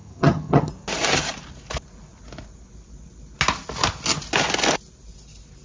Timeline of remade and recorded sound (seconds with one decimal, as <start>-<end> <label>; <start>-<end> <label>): 0.0-0.7 remade; 0.7-5.6 recorded